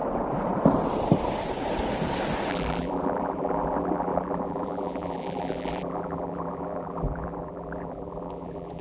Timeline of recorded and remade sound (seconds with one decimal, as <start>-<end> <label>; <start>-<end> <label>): 0.0-2.5 recorded; 2.5-8.8 remade